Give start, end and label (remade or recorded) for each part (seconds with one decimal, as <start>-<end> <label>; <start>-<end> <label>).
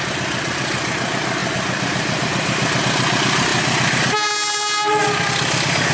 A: 0.0-5.9 recorded